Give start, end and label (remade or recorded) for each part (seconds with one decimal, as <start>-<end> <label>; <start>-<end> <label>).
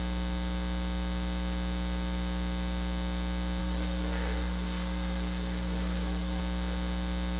0.0-3.6 recorded; 3.6-6.4 remade; 6.4-7.4 recorded